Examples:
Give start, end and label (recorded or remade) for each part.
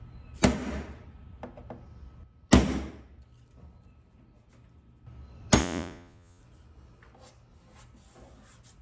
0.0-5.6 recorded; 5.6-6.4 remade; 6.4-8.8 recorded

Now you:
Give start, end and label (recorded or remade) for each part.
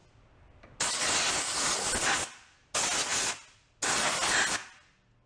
0.0-5.3 recorded